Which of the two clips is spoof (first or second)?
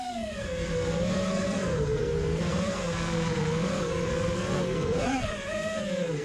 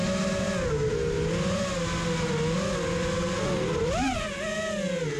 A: first